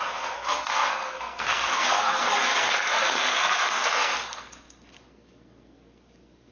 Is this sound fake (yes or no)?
yes